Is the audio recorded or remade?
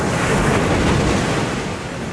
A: recorded